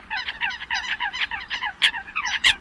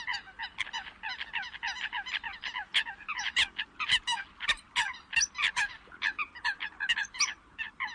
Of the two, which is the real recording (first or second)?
second